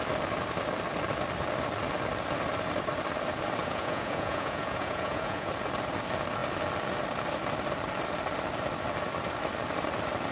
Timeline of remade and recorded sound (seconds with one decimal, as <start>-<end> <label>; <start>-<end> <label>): 0.0-3.6 recorded; 3.6-5.5 remade; 5.5-10.3 recorded

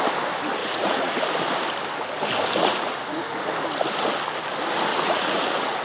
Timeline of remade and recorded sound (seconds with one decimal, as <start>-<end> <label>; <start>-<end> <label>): 0.0-0.6 recorded; 0.6-1.1 remade; 1.1-2.6 recorded; 2.6-3.5 remade; 3.5-4.9 recorded; 4.9-5.8 remade

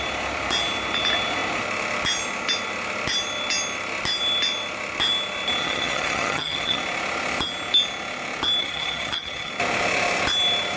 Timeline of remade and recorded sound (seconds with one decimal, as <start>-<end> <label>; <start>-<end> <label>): 0.0-5.6 recorded; 5.6-6.8 remade; 6.8-8.6 recorded; 8.6-9.5 remade; 9.5-10.8 recorded

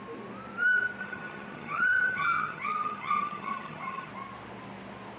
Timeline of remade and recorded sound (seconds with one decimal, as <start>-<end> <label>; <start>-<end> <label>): 0.0-1.0 recorded; 1.0-4.1 remade; 4.1-5.2 recorded

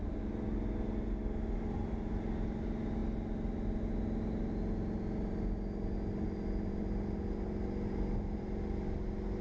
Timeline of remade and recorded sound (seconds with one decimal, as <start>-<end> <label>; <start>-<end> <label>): 0.0-9.4 recorded

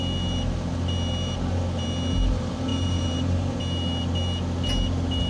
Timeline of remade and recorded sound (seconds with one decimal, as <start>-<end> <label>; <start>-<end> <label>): 0.0-2.7 recorded; 2.7-3.6 remade; 3.6-5.3 recorded

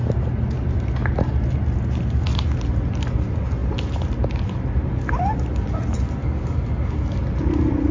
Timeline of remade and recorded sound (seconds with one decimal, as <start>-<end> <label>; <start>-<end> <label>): 0.0-6.2 recorded; 6.2-7.2 remade; 7.2-7.9 recorded